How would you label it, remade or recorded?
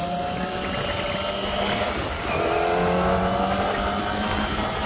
recorded